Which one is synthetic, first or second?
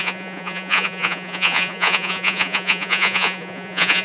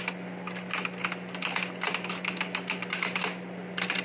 first